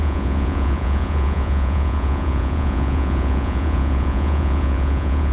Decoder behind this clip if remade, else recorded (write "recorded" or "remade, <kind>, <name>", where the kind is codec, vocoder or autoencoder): remade, vocoder, Vocos